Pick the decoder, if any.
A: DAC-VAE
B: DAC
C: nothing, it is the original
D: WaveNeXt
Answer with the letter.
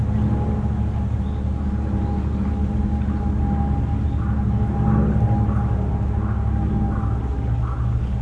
C